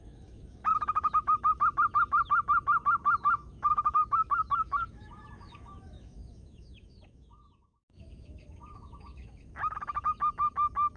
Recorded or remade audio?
remade